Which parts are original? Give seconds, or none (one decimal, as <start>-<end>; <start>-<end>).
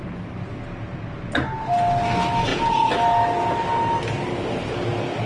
0.0-5.3